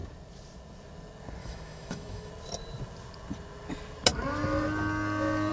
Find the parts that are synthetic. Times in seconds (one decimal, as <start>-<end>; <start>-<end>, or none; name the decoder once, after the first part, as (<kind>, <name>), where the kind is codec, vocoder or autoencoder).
1.4-2.3 (autoencoder, DAC-VAE)